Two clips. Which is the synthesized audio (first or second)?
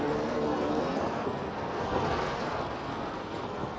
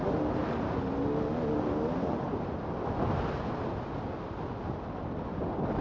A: first